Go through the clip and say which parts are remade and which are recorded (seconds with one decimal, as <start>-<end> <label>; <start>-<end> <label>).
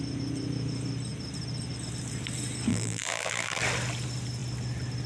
0.0-2.7 recorded; 2.7-3.6 remade; 3.6-5.1 recorded